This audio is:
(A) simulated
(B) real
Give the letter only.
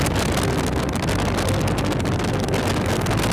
B